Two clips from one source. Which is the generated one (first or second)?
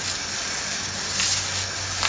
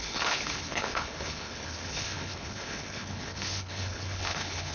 second